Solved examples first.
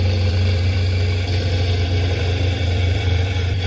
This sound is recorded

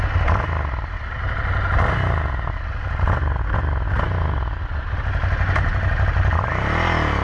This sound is recorded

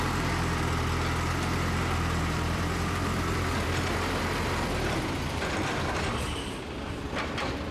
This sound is remade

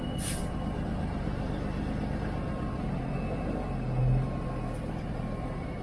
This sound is recorded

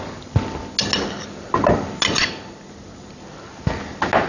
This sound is recorded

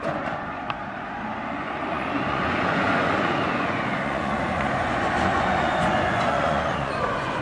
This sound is remade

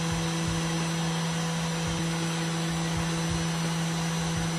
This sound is recorded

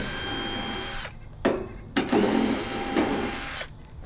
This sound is recorded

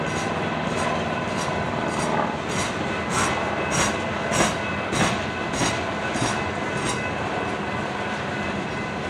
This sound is recorded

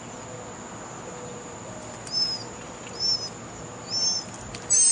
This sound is recorded